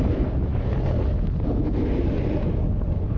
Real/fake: real